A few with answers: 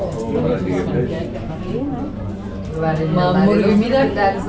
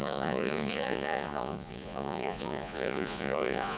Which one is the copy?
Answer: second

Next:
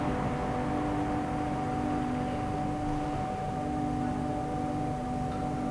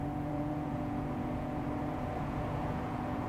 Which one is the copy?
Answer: second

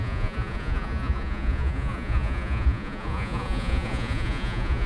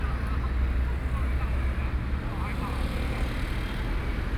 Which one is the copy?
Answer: first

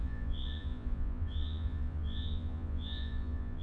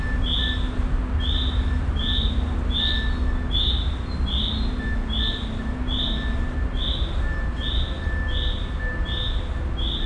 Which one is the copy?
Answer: first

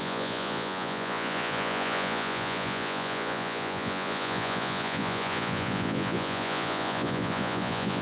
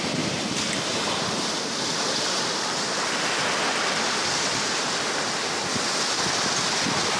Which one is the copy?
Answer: first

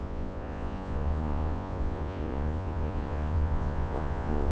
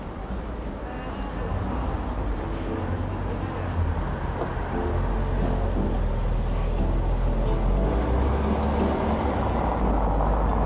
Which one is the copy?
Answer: first